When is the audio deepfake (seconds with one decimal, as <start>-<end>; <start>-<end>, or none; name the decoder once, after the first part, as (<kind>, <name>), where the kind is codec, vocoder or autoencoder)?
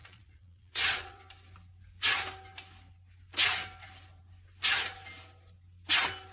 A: 0.0-1.2 (vocoder, Vocos)